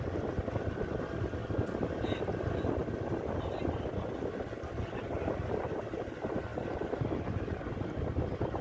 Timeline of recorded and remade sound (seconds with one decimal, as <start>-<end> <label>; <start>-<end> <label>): 0.0-8.6 recorded

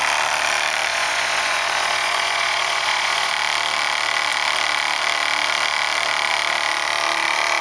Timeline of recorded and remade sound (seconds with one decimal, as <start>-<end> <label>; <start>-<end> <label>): 0.0-0.9 recorded; 0.9-3.3 remade; 3.3-7.6 recorded

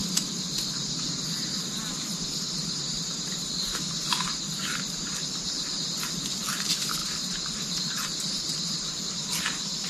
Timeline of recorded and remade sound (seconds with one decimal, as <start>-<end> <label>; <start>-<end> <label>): 0.0-2.9 recorded; 2.9-5.1 remade; 5.1-7.0 recorded; 7.0-9.0 remade; 9.0-9.9 recorded

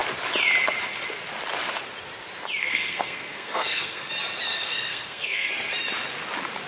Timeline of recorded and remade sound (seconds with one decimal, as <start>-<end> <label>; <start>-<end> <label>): 0.0-2.6 recorded; 2.6-4.1 remade; 4.1-4.5 recorded; 4.5-5.5 remade; 5.5-6.7 recorded

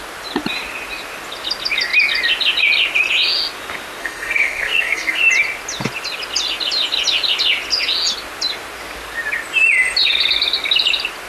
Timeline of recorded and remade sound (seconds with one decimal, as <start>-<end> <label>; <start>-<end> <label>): 0.0-4.0 recorded; 4.0-5.2 remade; 5.2-11.3 recorded